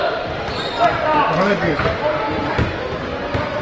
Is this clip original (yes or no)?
yes